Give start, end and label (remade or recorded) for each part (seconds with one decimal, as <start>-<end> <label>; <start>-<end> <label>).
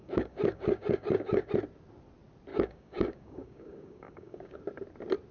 0.0-1.5 remade; 1.5-2.5 recorded; 2.5-4.6 remade; 4.6-5.3 recorded